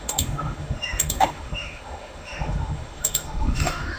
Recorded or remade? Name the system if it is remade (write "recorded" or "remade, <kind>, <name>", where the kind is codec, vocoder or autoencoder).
remade, autoencoder, DAC-VAE